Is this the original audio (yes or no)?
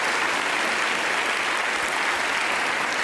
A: yes